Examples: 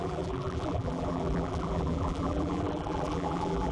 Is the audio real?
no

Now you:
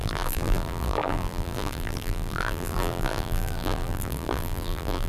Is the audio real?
no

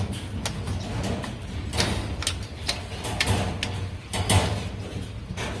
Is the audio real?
yes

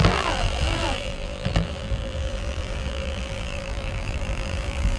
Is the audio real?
no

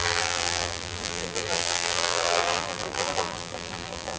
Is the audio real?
no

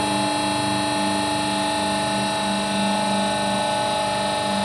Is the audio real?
yes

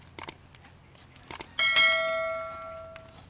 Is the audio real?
yes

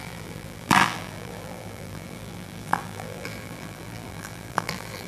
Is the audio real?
no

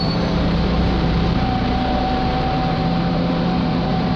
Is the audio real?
no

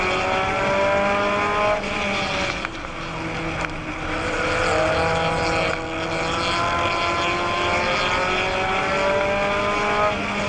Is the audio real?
yes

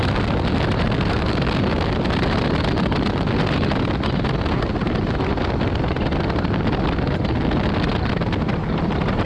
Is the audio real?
yes